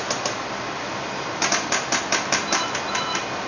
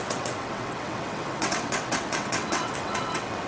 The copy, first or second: second